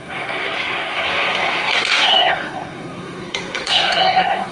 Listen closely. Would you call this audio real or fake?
fake